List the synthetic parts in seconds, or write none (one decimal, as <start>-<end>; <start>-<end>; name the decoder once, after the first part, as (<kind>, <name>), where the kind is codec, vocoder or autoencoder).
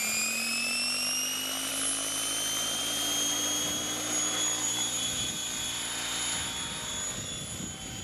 none